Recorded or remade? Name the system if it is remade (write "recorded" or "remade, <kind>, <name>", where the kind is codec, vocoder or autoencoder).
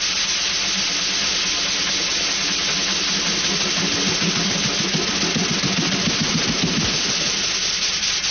recorded